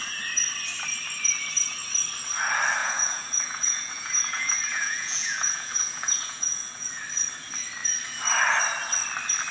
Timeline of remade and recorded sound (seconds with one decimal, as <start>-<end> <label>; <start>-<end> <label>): 0.0-2.8 recorded; 2.8-7.0 remade; 7.0-9.5 recorded